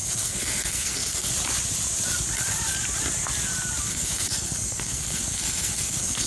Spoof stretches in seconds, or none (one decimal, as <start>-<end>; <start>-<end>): 0.0-1.3; 3.9-6.3